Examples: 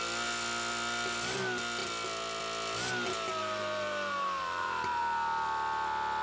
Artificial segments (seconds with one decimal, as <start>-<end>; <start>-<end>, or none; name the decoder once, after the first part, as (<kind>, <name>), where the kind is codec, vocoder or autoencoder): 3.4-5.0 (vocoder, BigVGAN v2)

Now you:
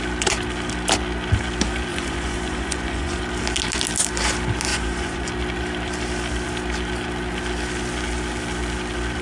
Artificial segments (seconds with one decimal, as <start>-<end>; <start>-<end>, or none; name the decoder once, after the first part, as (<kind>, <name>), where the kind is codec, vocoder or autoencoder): 1.9-3.2 (vocoder, Vocos); 4.7-5.3

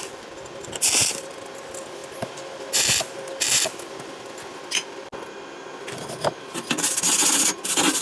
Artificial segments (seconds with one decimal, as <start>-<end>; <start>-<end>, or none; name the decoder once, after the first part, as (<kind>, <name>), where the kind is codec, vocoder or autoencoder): none